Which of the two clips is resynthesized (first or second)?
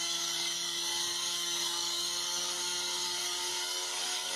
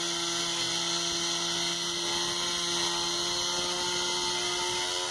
first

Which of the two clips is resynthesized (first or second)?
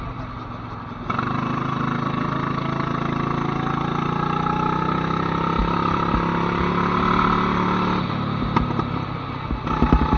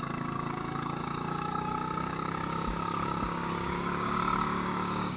second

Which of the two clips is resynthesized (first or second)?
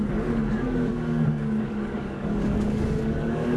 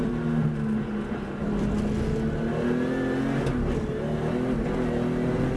first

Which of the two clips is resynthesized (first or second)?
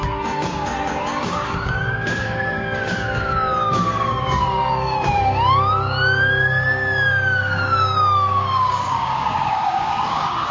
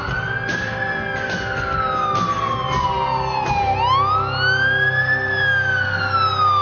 first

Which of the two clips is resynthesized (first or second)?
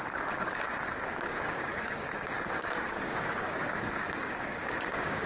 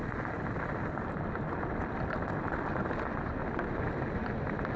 first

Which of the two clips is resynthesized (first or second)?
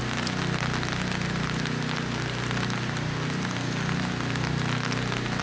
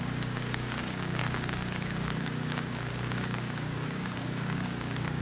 second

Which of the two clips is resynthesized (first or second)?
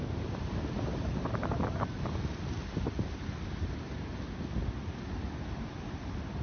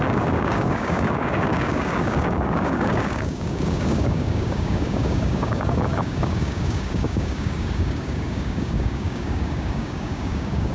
second